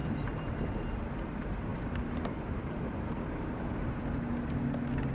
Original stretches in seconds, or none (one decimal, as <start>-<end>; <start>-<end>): 0.8-1.7; 3.9-5.1